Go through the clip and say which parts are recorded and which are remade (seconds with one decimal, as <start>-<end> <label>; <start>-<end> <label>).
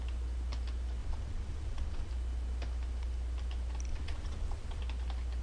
0.0-1.0 recorded; 1.0-2.1 remade; 2.1-3.9 recorded; 3.9-4.8 remade; 4.8-5.4 recorded